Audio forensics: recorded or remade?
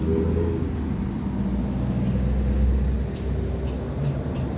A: recorded